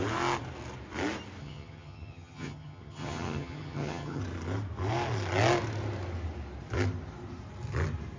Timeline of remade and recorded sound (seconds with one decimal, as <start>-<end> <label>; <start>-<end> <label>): 0.0-1.4 recorded; 1.4-4.2 remade; 4.2-8.2 recorded

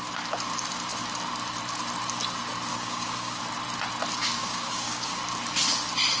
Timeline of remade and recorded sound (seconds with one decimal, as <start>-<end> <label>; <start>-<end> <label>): 0.0-2.7 recorded; 2.7-3.4 remade; 3.4-4.4 recorded; 4.4-5.2 remade; 5.2-6.2 recorded

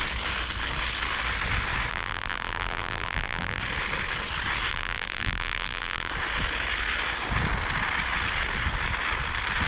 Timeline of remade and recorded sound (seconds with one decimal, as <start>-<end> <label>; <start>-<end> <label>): 0.0-1.9 recorded; 1.9-3.6 remade; 3.6-4.7 recorded; 4.7-6.1 remade; 6.1-9.7 recorded

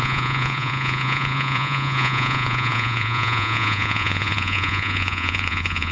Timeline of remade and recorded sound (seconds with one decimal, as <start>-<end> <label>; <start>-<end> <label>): 0.0-5.9 remade

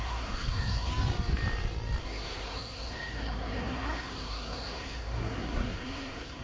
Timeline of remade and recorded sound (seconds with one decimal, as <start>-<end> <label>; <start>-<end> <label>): 0.0-0.9 remade; 0.9-2.0 recorded; 2.0-6.4 remade

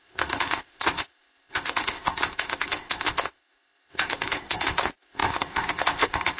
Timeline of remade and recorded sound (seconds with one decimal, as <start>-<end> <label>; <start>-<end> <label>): 0.0-6.4 remade